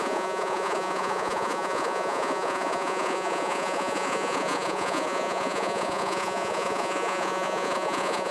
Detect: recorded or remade remade